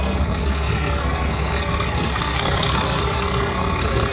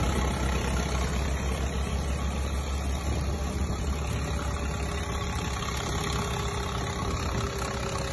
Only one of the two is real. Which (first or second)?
second